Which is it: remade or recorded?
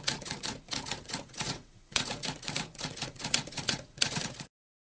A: remade